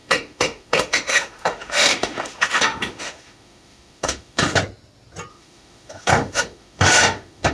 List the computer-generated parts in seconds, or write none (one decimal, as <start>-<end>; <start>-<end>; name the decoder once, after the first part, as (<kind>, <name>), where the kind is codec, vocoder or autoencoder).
0.0-4.6 (autoencoder, DAC-VAE); 5.3-7.5